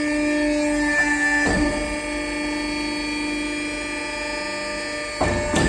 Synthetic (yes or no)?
no